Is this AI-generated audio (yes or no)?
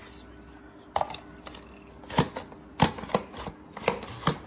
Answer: no